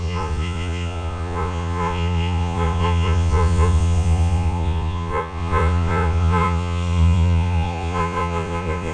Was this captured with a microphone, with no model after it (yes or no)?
no